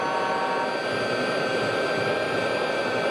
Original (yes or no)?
yes